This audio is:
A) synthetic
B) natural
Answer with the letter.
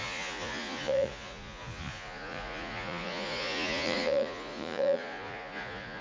A